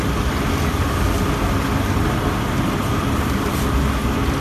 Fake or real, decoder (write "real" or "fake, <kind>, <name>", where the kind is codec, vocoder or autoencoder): real